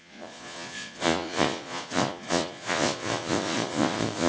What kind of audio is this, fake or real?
fake